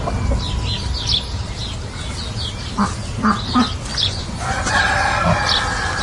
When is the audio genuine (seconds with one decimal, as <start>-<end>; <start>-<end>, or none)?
0.0-3.9; 4.8-6.0